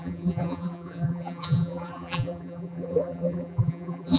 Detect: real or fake fake